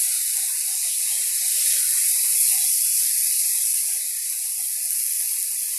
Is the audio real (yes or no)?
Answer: yes